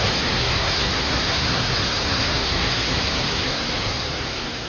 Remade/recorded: remade